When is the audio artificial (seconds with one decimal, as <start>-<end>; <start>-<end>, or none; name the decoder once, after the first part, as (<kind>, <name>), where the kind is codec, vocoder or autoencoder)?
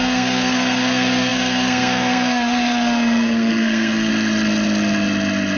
0.0-4.1 (codec, SNAC)